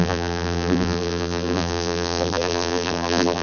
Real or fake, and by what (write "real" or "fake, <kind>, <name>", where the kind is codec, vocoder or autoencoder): fake, vocoder, BigVGAN v2